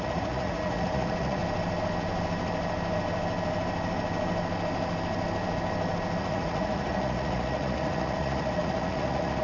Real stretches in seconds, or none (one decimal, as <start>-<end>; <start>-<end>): 1.4-6.2